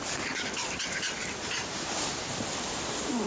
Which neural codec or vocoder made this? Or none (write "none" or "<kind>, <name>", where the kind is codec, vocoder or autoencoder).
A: none